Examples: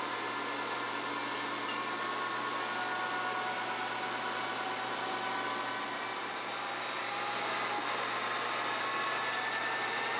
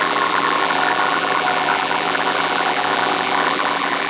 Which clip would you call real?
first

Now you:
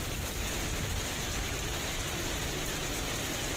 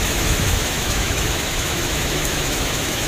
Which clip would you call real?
first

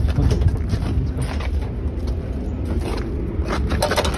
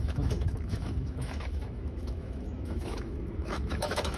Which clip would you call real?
first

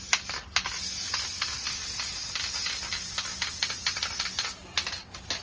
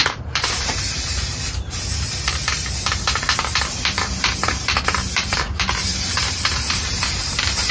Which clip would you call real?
first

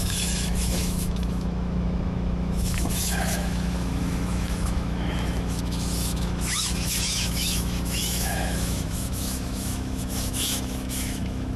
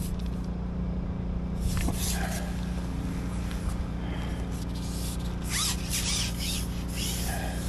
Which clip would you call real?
second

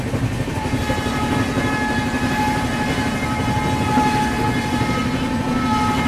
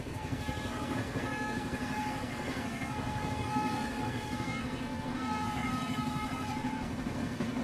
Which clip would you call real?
first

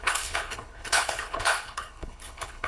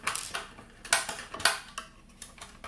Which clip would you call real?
second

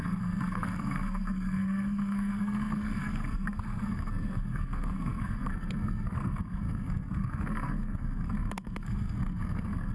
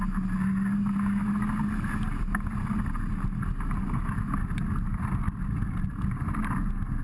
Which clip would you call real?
second